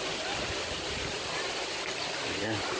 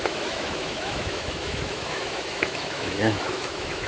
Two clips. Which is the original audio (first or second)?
first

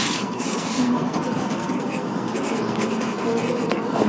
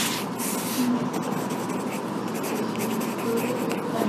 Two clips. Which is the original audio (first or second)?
second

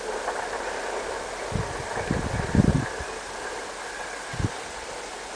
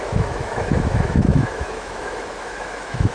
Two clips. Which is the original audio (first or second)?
first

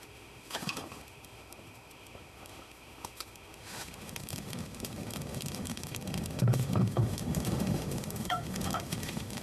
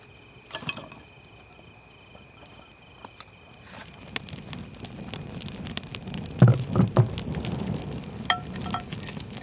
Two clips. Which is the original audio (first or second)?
second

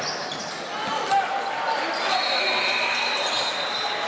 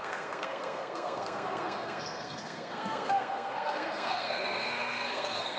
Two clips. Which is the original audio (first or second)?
first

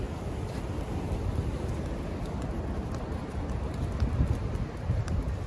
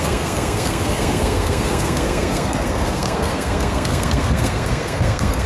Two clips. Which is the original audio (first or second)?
first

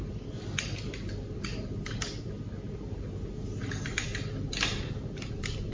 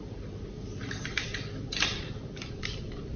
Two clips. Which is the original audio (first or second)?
first